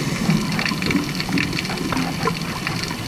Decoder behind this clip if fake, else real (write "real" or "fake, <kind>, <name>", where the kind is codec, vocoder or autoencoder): real